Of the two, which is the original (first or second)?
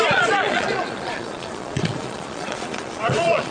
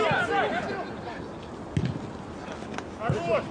second